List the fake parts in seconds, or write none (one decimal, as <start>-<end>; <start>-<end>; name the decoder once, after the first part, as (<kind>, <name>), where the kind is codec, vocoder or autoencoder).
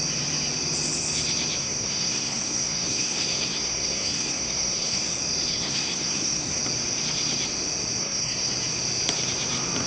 1.6-5.0 (codec, SNAC); 5.5-6.6; 8.0-8.5